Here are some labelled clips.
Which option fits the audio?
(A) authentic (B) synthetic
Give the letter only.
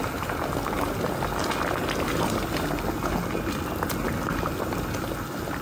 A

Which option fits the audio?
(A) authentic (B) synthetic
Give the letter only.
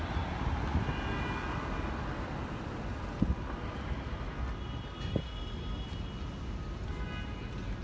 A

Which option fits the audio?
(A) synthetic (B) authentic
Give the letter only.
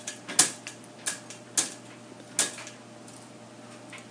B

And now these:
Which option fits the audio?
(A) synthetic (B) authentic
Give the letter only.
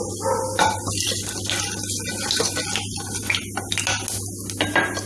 B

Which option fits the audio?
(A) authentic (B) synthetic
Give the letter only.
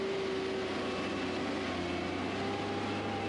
A